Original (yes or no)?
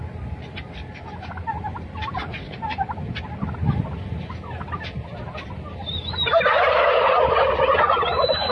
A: yes